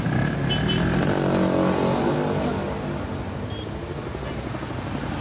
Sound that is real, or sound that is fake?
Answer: real